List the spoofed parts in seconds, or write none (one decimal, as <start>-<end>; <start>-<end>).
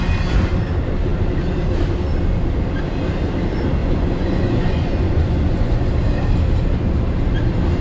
3.8-5.9